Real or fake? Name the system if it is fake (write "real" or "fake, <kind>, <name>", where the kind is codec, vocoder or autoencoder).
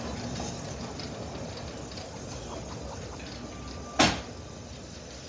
real